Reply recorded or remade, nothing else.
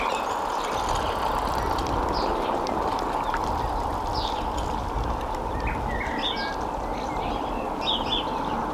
recorded